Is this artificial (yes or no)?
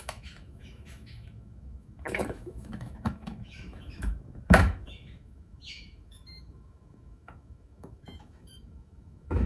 yes